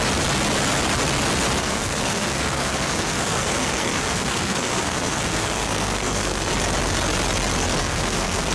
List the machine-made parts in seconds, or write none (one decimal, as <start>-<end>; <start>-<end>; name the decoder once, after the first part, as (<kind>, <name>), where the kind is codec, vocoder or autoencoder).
1.6-6.5 (codec, SNAC); 7.8-8.5